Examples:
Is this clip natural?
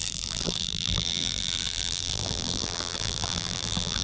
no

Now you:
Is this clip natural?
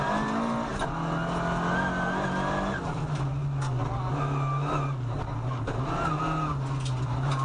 yes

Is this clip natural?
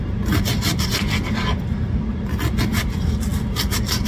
yes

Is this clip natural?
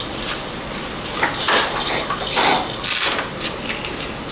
yes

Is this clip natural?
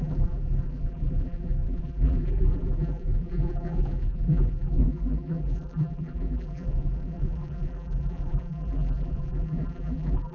no